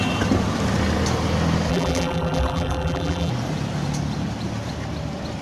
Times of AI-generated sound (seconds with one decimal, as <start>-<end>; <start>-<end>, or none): 1.7-3.3